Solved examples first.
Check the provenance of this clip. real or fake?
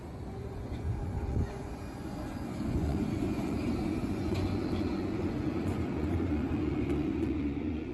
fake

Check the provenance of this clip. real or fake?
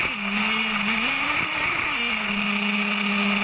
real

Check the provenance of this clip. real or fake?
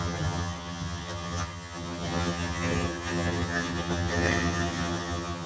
fake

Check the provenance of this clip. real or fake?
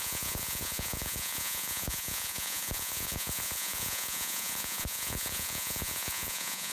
fake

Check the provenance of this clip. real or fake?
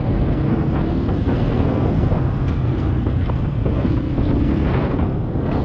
fake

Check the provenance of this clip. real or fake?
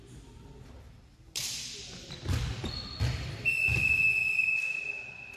real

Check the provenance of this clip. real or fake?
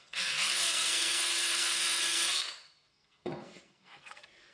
fake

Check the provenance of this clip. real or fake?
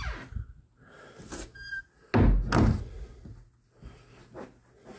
real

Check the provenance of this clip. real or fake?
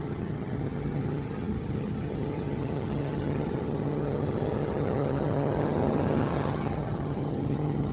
fake